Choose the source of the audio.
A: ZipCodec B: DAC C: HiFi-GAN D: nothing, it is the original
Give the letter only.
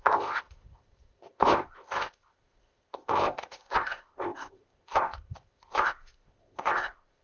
A